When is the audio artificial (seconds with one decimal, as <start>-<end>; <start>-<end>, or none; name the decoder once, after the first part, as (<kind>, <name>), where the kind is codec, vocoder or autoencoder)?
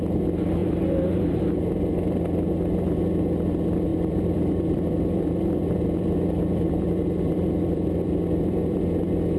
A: 0.6-1.5 (vocoder, BigVGAN v2); 3.9-8.8